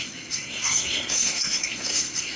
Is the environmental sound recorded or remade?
remade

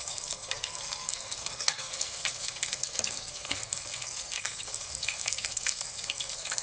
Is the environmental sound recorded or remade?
remade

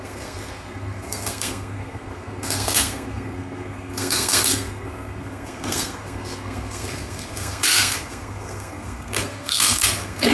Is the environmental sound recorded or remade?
remade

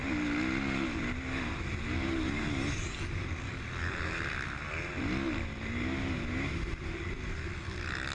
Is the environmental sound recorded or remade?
recorded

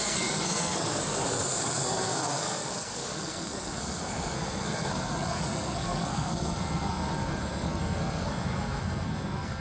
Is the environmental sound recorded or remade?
remade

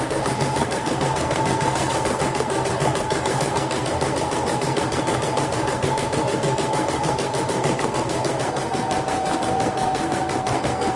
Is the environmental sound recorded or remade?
remade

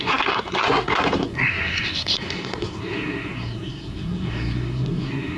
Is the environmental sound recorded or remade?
remade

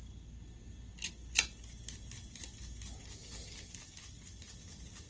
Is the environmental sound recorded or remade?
recorded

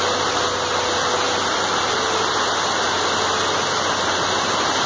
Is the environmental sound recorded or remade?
recorded